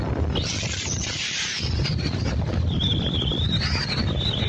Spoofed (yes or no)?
no